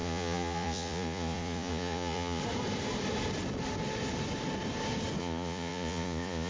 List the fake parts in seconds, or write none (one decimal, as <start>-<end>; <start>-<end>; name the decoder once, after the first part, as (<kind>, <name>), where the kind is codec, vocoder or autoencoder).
0.0-2.4 (vocoder, Vocos); 5.2-6.5